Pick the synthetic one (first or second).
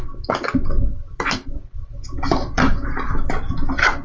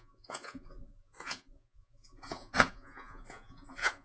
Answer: second